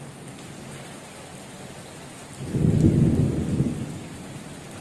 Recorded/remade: recorded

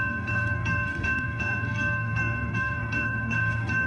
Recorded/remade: remade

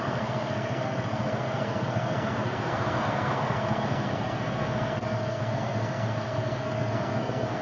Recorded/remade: remade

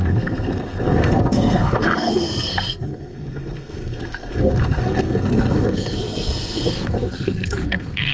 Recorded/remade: remade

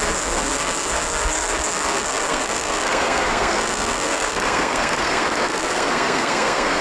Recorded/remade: remade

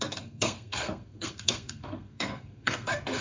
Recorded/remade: remade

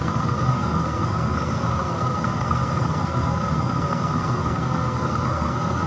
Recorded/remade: remade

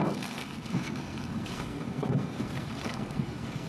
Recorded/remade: remade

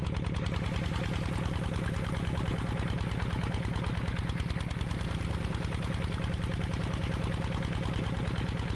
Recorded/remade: recorded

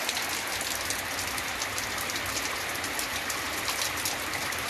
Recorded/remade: recorded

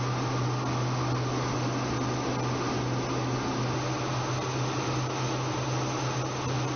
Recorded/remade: recorded